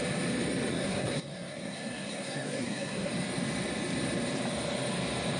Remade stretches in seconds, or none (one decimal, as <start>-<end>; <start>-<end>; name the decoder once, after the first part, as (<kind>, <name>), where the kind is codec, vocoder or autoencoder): 0.7-3.1 (codec, SNAC)